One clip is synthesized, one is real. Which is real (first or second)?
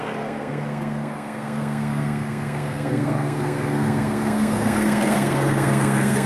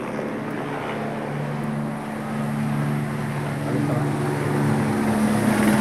second